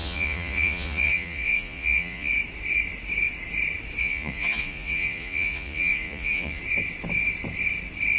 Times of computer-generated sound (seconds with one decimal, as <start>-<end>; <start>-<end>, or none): 0.0-2.3; 4.0-6.6